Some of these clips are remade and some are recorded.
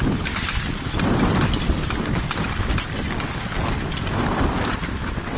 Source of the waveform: remade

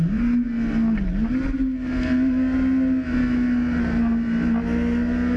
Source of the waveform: recorded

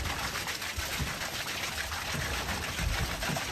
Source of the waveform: recorded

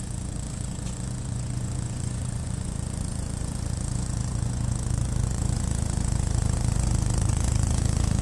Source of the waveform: remade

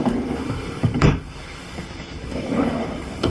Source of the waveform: remade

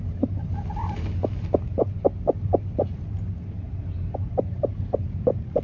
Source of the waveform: recorded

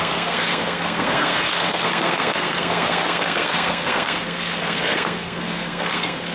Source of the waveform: remade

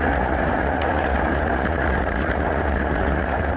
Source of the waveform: remade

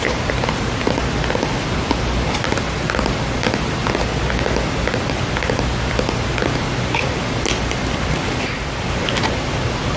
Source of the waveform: recorded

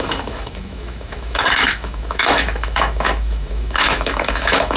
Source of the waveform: remade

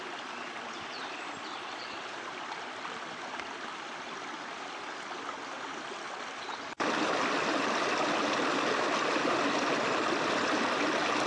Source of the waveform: recorded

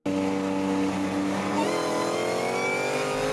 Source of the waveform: recorded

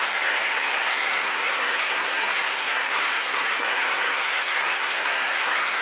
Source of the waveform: remade